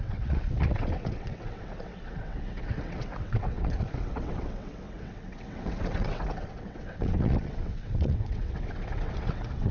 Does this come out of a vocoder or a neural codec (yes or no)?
yes